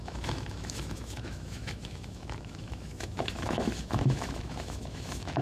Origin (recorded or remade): remade